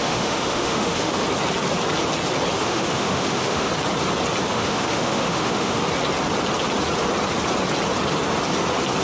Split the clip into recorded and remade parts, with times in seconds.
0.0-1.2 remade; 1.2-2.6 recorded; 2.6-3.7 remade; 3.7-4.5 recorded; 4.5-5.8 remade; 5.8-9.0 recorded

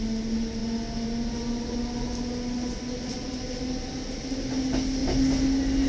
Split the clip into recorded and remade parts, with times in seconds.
0.0-5.9 recorded

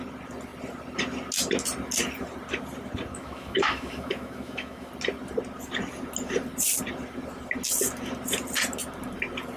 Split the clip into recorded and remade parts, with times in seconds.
0.0-3.1 recorded; 3.1-4.9 remade; 4.9-9.6 recorded

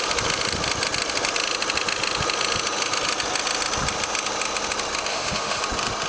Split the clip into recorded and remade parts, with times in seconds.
0.0-5.1 recorded; 5.1-5.6 remade; 5.6-6.1 recorded

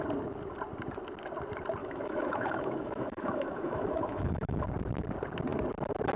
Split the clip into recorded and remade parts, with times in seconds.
0.0-1.8 recorded; 1.8-4.6 remade; 4.6-6.2 recorded